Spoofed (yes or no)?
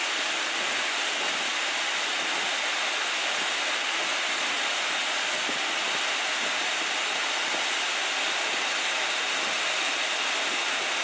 no